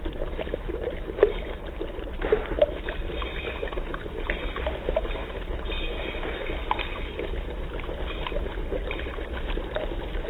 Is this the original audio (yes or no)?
yes